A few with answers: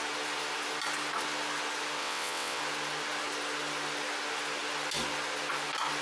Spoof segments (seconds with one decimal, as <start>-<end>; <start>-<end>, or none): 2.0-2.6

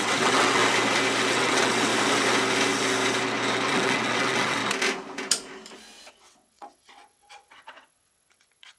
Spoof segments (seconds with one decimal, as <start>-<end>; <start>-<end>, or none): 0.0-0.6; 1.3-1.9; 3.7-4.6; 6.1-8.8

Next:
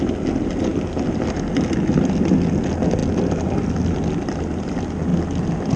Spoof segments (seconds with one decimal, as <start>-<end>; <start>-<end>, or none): none

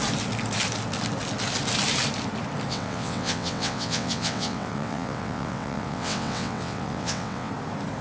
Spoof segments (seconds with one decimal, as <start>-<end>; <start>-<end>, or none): 2.7-7.5

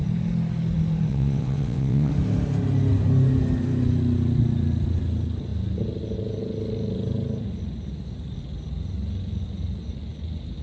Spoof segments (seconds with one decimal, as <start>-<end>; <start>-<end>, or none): 1.1-2.1

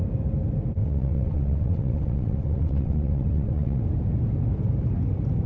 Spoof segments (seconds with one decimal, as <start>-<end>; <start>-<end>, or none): 0.8-3.8